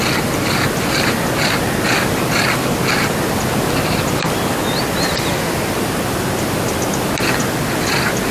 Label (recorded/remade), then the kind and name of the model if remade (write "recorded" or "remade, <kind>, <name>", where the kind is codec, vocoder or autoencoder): recorded